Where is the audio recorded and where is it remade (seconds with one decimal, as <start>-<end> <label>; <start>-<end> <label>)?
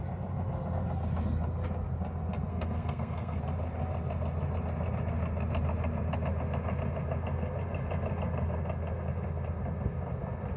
0.0-2.5 recorded; 2.5-3.4 remade; 3.4-10.6 recorded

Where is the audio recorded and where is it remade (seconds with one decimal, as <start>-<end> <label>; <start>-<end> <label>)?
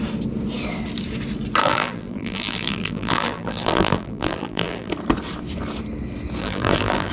0.0-1.6 recorded; 1.6-4.9 remade; 4.9-6.4 recorded; 6.4-7.1 remade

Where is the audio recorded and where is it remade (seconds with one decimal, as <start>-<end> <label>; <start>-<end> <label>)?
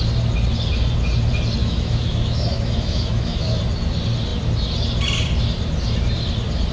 0.0-1.6 recorded; 1.6-3.6 remade; 3.6-6.7 recorded